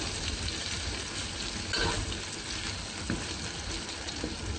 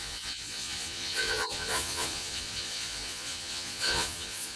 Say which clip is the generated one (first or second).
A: second